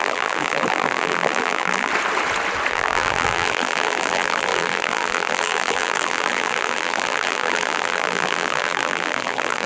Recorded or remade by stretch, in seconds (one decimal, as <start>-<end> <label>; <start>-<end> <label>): 0.0-1.9 remade; 1.9-2.7 recorded; 2.7-9.7 remade

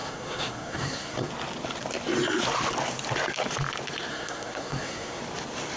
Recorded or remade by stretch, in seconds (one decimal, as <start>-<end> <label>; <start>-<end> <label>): 0.0-1.3 remade; 1.3-4.1 recorded; 4.1-5.2 remade; 5.2-5.8 recorded

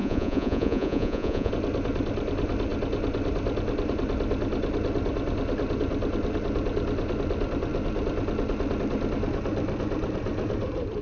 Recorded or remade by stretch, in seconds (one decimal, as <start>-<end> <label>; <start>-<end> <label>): 0.0-1.5 remade; 1.5-11.0 recorded

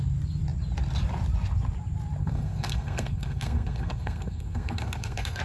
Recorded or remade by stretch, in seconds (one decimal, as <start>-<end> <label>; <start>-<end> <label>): 0.0-2.2 recorded; 2.2-5.4 remade

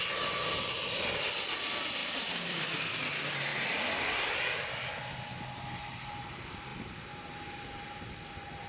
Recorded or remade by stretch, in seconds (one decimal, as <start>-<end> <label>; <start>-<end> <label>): 0.0-2.0 recorded; 2.0-2.6 remade; 2.6-8.7 recorded

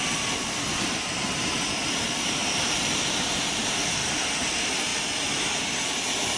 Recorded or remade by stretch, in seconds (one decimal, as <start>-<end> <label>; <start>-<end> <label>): 0.0-4.0 remade; 4.0-4.5 recorded; 4.5-4.9 remade; 4.9-5.6 recorded; 5.6-6.4 remade